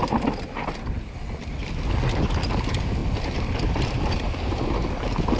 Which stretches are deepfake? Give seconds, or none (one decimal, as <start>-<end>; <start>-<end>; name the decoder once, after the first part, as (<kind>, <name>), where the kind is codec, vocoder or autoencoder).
none

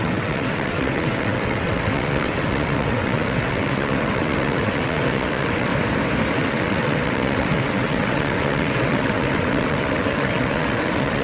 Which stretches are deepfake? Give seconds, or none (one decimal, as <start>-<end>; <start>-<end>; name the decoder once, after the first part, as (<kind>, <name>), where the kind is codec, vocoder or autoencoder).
0.0-5.7 (vocoder, WaveNeXt); 6.3-11.2

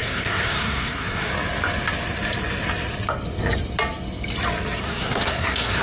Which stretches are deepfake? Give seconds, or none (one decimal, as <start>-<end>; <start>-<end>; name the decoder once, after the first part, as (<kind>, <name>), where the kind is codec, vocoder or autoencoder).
0.0-1.3 (codec, SNAC); 4.8-5.8

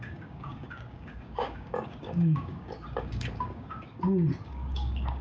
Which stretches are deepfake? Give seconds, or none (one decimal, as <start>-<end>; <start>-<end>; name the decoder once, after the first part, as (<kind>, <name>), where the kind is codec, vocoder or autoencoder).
0.0-5.2 (codec, DAC)